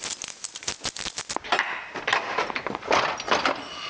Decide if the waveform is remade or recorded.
recorded